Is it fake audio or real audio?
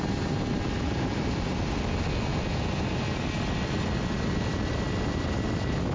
real